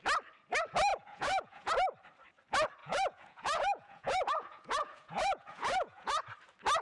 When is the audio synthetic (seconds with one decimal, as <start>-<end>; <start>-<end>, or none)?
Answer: 0.9-1.7; 2.8-6.2